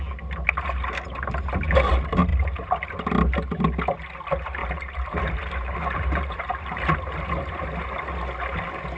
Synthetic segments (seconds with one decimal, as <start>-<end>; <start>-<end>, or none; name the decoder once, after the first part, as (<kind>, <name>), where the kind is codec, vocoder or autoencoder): 4.6-7.5 (vocoder, BigVGAN v2)